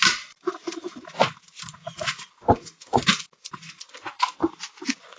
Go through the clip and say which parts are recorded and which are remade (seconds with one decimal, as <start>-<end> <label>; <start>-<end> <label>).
0.0-5.2 recorded